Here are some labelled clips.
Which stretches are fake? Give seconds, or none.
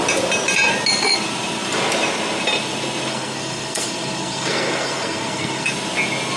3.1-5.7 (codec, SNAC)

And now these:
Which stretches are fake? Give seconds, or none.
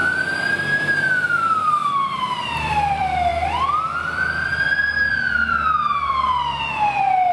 0.8-1.8 (vocoder, BigVGAN v2); 2.9-3.3; 4.0-7.3